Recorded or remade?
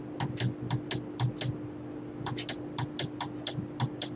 recorded